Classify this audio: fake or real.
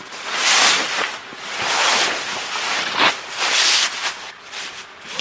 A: real